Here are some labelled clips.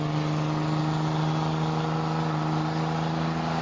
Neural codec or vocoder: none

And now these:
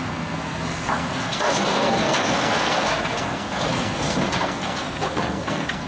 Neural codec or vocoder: codec, SNAC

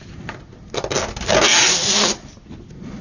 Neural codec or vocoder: none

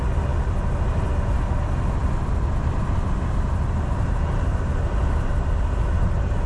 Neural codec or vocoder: none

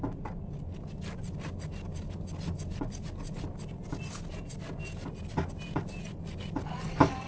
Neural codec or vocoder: none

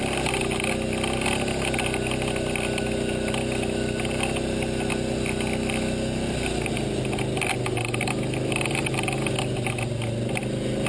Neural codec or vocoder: none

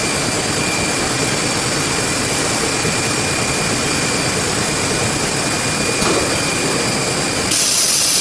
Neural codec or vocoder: none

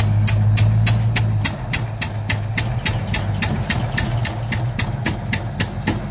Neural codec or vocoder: none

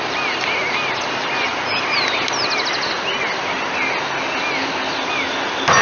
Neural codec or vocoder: none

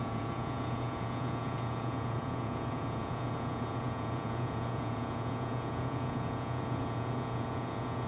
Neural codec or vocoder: vocoder, Vocos